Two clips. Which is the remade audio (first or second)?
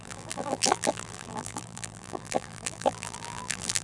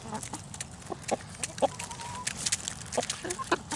first